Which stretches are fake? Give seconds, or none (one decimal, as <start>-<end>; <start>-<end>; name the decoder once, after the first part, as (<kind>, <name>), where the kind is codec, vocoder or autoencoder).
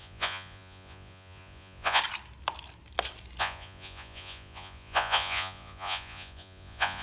0.0-2.0 (vocoder, Vocos); 3.4-7.0